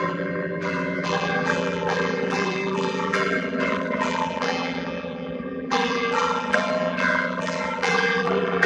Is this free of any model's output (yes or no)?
no